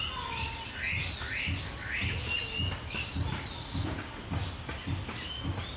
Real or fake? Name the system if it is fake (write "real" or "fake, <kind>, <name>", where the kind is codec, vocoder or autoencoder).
real